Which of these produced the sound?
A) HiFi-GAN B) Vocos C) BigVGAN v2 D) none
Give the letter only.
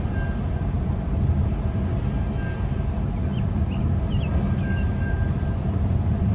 D